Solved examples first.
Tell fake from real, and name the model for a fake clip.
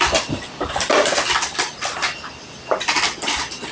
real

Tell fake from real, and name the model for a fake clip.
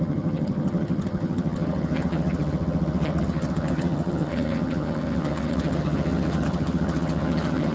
fake, vocoder, HiFi-GAN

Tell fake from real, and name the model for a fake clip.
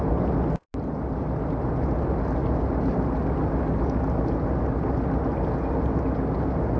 real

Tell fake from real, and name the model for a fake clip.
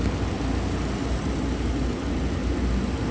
real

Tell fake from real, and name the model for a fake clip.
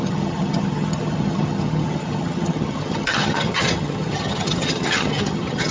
fake, vocoder, HiFi-GAN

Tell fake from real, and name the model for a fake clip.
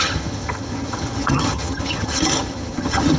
fake, vocoder, HiFi-GAN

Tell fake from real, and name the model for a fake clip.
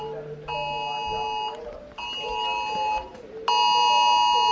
real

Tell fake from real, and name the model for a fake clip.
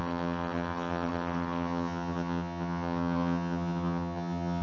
fake, vocoder, HiFi-GAN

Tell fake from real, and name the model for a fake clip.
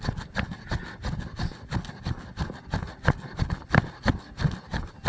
real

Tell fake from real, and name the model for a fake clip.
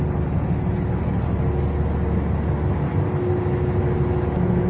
real